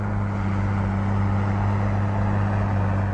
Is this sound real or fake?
real